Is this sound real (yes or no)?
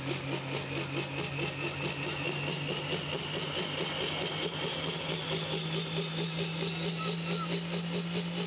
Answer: yes